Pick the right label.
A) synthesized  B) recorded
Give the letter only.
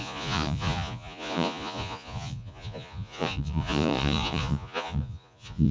A